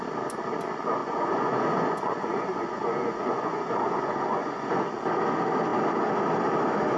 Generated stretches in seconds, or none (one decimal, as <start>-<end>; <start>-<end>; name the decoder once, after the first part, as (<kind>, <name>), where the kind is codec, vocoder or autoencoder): 1.0-4.9 (vocoder, Vocos)